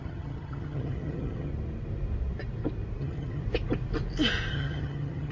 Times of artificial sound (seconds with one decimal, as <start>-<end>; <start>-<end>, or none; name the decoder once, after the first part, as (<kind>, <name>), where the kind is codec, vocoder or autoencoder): 0.0-1.5 (vocoder, HiFi-GAN); 3.0-3.4; 4.5-5.3